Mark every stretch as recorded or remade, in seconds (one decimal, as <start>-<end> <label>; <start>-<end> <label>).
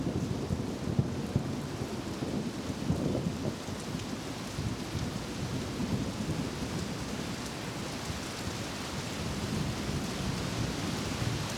0.0-11.6 recorded